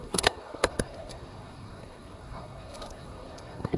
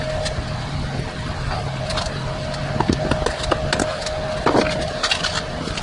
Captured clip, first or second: second